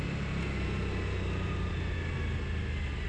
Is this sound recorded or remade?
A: recorded